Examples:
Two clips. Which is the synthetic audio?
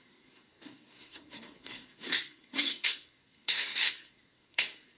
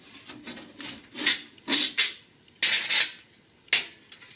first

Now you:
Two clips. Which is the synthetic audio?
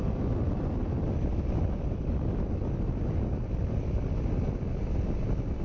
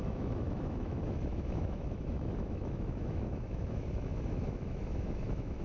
second